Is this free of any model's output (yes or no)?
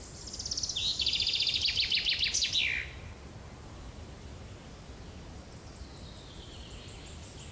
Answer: yes